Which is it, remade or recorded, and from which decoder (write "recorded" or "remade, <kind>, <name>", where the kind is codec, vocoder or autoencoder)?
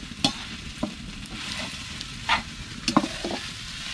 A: recorded